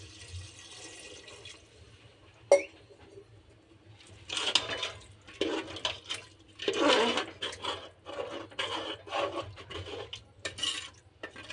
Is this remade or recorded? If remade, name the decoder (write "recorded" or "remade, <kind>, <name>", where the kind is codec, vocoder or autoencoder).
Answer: recorded